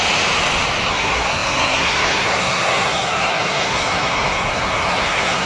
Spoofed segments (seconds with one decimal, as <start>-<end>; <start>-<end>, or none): 0.9-5.5